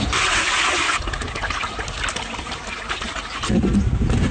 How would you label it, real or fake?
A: real